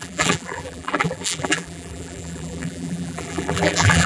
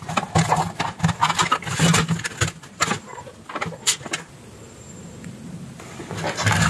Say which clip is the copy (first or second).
first